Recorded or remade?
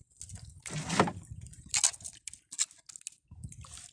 recorded